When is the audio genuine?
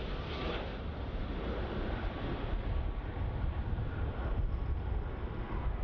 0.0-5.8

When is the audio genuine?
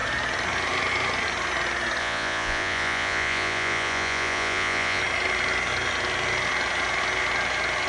0.0-2.0; 5.0-7.9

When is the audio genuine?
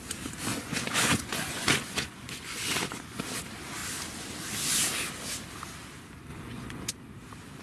0.0-0.5; 3.2-6.3; 6.9-7.6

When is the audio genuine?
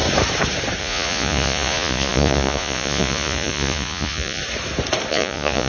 0.0-0.8; 4.4-5.1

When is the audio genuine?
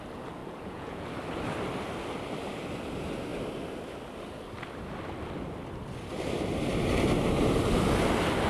0.0-0.4; 1.1-8.5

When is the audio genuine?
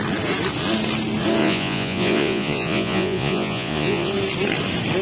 0.0-1.4; 4.1-5.0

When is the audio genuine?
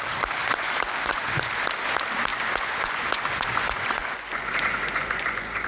0.0-0.4; 1.5-2.3